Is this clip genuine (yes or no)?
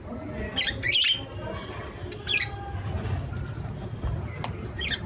yes